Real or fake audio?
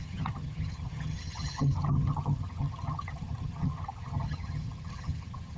fake